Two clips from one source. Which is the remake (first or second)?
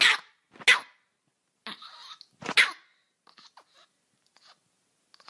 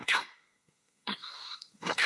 second